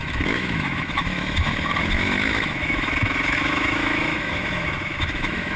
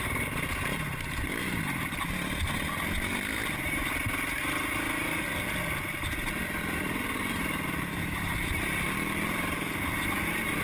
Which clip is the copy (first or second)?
first